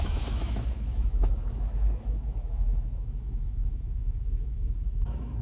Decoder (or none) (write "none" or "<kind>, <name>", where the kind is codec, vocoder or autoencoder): autoencoder, DAC-VAE